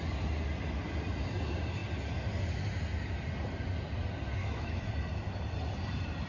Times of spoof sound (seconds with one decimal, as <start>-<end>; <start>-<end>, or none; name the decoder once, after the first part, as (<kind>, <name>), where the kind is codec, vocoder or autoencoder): 4.4-4.9 (autoencoder, DAC-VAE)